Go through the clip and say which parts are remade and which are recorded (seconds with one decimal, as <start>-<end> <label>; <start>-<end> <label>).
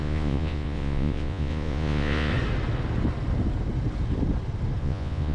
0.0-2.3 remade; 2.3-4.8 recorded; 4.8-5.3 remade